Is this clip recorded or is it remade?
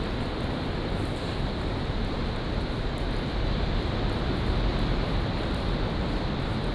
recorded